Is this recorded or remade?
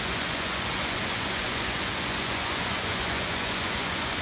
remade